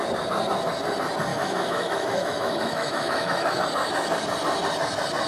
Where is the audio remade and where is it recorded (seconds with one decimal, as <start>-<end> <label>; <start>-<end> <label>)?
0.0-1.3 recorded; 1.3-3.6 remade; 3.6-5.3 recorded